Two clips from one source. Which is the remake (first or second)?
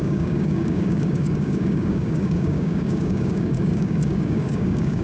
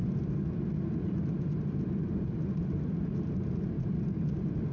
first